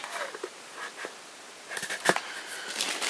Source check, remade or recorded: recorded